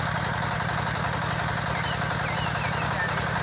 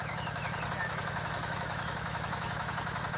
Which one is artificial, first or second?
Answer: second